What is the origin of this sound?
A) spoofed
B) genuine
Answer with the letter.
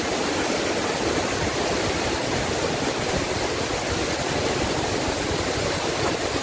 B